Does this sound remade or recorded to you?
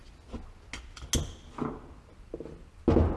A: recorded